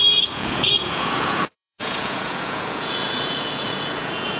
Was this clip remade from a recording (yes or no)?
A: yes